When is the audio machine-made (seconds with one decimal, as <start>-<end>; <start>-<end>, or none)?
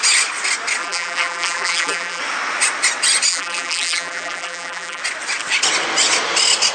0.8-2.2; 3.3-5.0